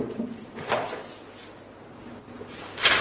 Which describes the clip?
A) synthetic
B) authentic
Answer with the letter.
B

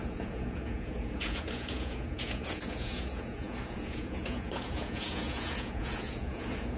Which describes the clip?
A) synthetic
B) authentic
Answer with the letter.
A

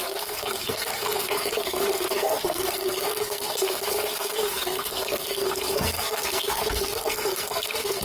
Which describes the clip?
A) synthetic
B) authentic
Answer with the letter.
A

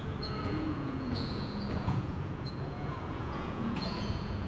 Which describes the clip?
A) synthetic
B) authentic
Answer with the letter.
A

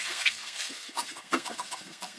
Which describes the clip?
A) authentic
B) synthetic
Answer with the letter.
B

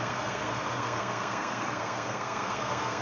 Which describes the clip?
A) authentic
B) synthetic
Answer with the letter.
B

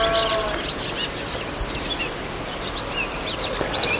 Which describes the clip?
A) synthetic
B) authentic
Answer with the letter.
B